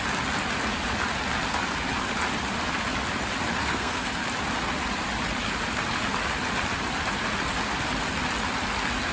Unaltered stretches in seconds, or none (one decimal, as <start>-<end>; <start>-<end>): 0.0-3.6; 4.1-9.1